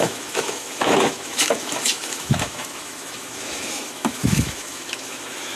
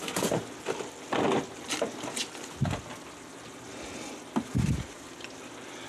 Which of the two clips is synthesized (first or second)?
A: first